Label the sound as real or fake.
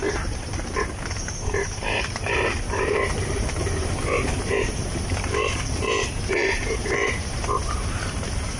fake